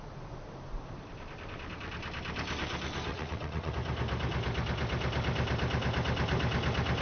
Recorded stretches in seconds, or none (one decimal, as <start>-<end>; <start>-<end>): 0.0-3.1; 3.7-7.0

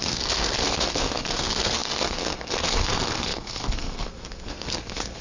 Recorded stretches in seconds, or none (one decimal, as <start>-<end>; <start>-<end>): none

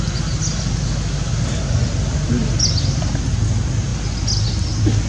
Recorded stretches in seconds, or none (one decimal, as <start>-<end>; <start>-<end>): 0.0-5.1

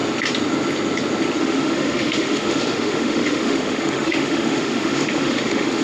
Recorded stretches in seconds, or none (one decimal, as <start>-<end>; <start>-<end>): 0.0-1.4